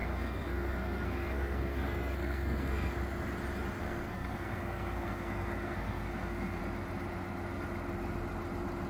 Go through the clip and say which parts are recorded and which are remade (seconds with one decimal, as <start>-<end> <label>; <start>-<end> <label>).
0.0-2.9 remade; 2.9-3.8 recorded; 3.8-6.6 remade; 6.6-8.9 recorded